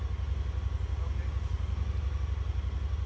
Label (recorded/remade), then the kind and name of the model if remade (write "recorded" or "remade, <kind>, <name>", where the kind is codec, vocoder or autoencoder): recorded